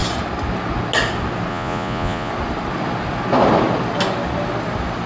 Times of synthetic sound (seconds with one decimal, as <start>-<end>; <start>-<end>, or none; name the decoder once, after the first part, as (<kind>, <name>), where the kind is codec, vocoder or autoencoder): 1.5-2.3 (vocoder, Vocos)